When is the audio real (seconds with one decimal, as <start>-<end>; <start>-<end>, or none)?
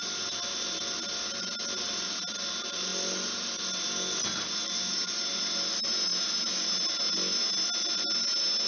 0.0-8.7